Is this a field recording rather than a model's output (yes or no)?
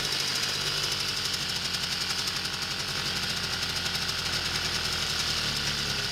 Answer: yes